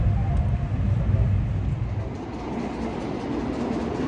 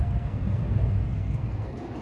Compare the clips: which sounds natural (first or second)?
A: first